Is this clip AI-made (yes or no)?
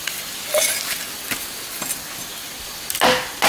no